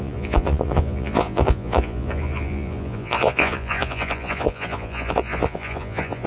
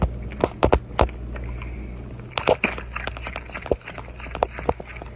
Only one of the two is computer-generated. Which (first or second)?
first